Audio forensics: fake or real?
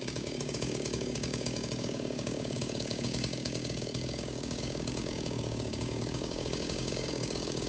fake